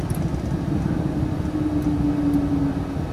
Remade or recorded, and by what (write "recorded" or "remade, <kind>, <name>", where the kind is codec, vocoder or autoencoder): recorded